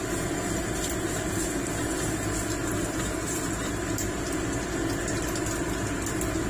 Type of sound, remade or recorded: recorded